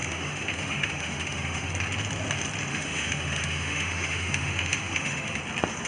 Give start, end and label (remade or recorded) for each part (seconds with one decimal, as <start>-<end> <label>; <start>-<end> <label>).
0.0-1.7 remade; 1.7-2.7 recorded; 2.7-5.4 remade; 5.4-5.9 recorded